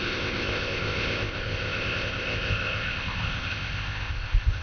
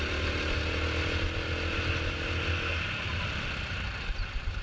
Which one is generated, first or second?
first